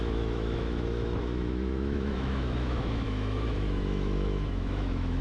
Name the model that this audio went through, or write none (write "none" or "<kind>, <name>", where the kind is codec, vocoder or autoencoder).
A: autoencoder, DAC-VAE